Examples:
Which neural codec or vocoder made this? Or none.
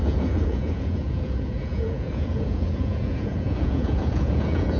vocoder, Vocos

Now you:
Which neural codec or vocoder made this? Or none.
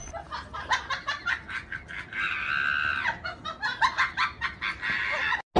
none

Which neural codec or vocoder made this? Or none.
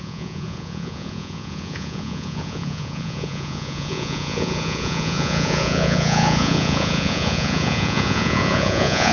vocoder, Vocos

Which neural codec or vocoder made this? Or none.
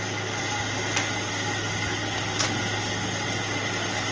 none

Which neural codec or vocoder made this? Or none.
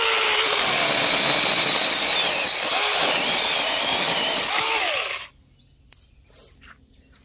none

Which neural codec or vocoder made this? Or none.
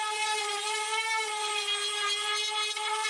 none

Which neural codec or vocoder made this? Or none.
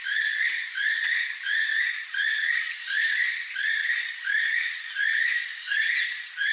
vocoder, Vocos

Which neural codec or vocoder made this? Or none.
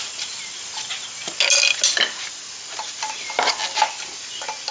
none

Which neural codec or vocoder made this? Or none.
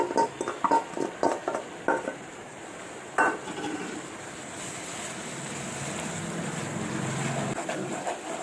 none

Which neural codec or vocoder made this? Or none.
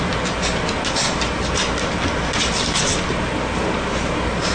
none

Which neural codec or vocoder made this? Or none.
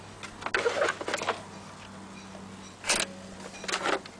none